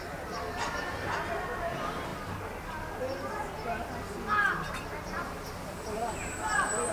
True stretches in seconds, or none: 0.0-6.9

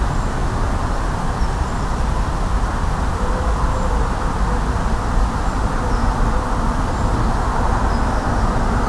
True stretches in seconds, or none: 0.0-8.9